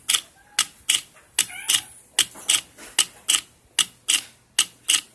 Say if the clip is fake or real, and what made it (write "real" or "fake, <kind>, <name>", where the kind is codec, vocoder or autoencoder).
real